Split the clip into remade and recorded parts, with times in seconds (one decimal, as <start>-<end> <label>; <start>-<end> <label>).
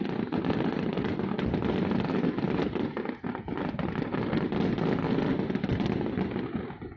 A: 0.0-7.0 recorded